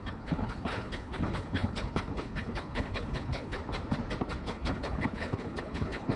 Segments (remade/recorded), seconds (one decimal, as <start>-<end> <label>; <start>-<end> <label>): 0.0-3.6 remade; 3.6-4.4 recorded; 4.4-6.2 remade